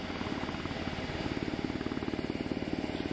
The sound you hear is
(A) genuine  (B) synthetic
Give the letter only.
A